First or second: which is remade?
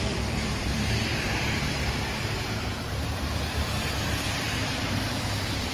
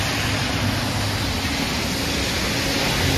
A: first